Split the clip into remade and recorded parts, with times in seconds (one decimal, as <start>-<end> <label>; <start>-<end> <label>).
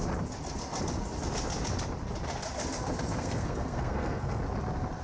0.0-3.1 recorded; 3.1-4.4 remade; 4.4-5.0 recorded